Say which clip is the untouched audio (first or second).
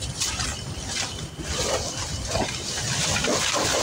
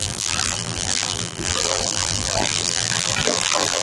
first